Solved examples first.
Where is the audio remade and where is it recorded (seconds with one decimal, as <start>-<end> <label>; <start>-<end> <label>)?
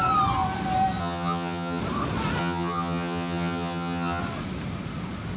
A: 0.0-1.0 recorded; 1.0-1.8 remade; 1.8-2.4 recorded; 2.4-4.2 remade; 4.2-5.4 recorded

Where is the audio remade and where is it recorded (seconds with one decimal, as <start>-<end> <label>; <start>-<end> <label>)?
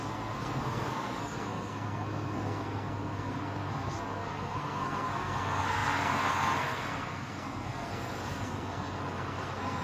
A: 0.0-9.8 remade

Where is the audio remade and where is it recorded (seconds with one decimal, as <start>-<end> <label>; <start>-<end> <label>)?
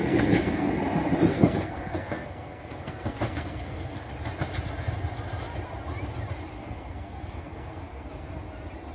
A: 0.0-0.7 remade; 0.7-1.3 recorded; 1.3-4.1 remade; 4.1-6.6 recorded; 6.6-8.3 remade; 8.3-8.9 recorded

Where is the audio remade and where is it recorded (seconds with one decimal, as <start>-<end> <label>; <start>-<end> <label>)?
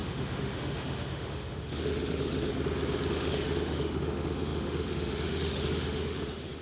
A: 0.0-2.5 remade; 2.5-3.1 recorded; 3.1-6.6 remade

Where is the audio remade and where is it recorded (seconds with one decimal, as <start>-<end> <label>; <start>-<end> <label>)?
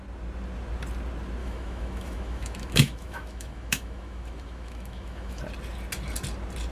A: 0.0-1.4 recorded; 1.4-5.4 remade; 5.4-6.7 recorded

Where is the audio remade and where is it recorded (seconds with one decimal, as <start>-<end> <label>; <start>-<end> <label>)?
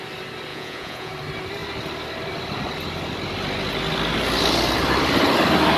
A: 0.0-0.5 recorded; 0.5-1.1 remade; 1.1-5.8 recorded